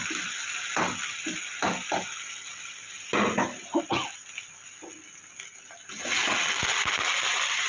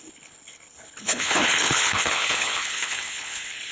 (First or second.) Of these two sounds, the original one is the first